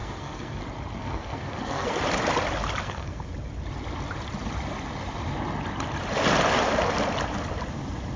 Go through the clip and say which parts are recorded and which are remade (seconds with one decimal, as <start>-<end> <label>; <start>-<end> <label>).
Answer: 0.0-0.6 remade; 0.6-1.0 recorded; 1.0-2.0 remade; 2.0-2.8 recorded; 2.8-3.3 remade; 3.3-8.2 recorded

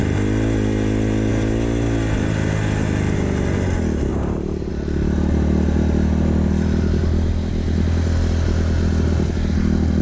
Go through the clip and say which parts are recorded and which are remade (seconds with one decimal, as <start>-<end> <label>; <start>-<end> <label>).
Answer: 0.0-4.1 recorded; 4.1-4.7 remade; 4.7-10.0 recorded

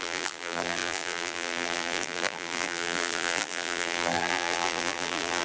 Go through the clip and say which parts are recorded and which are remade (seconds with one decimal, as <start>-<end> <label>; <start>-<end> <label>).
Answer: 0.0-5.4 remade

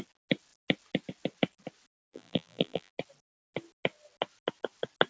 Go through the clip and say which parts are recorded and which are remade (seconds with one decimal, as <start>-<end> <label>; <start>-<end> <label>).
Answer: 0.0-2.0 recorded; 2.0-2.9 remade; 2.9-5.1 recorded

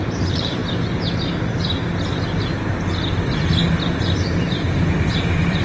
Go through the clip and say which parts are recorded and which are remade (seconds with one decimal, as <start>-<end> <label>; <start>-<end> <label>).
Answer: 0.0-0.6 remade; 0.6-4.0 recorded; 4.0-5.6 remade